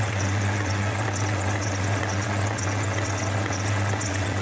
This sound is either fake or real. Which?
fake